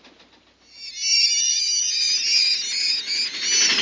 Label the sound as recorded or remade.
recorded